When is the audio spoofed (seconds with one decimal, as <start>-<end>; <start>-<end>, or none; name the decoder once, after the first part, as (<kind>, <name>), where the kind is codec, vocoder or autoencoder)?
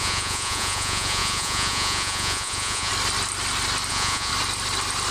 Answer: 0.0-2.9 (vocoder, Vocos); 3.9-4.3